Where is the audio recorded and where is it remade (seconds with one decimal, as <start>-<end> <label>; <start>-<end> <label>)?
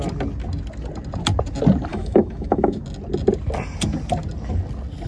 0.0-1.9 recorded; 1.9-2.8 remade; 2.8-5.1 recorded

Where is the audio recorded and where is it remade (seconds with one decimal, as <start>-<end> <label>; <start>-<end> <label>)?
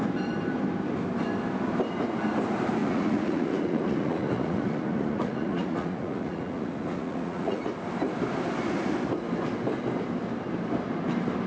0.0-2.8 recorded; 2.8-7.6 remade; 7.6-11.5 recorded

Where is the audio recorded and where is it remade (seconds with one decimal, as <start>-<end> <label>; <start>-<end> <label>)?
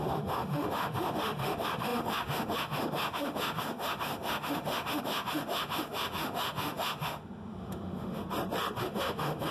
0.0-8.2 remade; 8.2-8.8 recorded; 8.8-9.5 remade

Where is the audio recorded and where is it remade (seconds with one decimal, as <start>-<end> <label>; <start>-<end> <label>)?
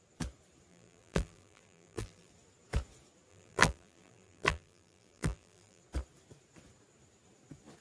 0.0-0.7 recorded; 0.7-2.3 remade; 2.3-3.3 recorded; 3.3-5.8 remade; 5.8-7.8 recorded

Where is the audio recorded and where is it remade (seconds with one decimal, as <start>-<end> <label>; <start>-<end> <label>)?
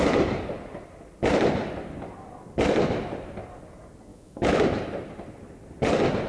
0.0-4.1 recorded; 4.1-4.6 remade; 4.6-6.3 recorded